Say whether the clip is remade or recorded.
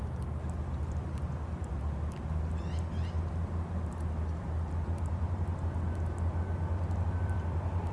recorded